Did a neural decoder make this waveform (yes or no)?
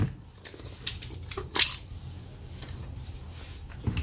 no